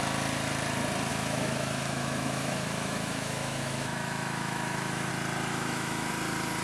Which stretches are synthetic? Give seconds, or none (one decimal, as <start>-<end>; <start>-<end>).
1.1-5.1; 5.5-6.1